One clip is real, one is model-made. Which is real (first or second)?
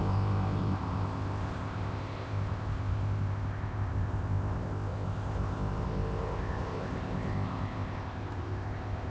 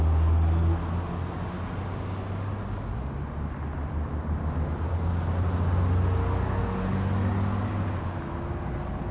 second